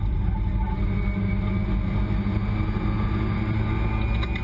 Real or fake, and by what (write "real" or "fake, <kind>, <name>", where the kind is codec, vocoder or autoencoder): real